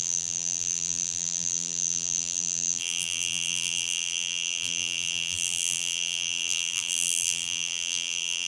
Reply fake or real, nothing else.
fake